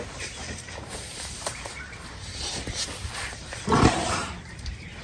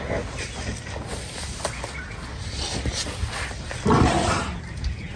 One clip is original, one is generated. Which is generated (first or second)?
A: first